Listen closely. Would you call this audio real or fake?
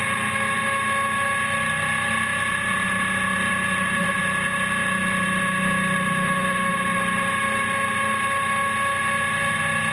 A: real